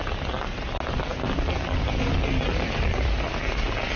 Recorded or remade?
recorded